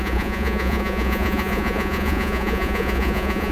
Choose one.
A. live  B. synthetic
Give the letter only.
B